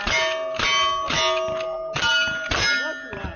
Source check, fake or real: real